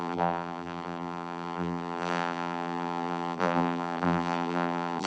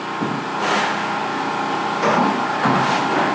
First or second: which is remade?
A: first